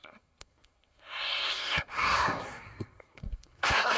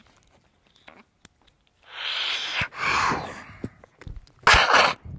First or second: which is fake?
first